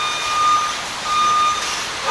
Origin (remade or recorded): recorded